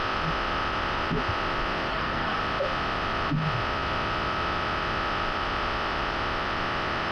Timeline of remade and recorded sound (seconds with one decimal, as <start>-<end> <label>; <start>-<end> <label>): 0.0-1.9 recorded; 1.9-2.4 remade; 2.4-7.1 recorded